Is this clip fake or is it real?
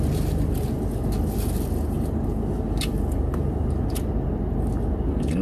real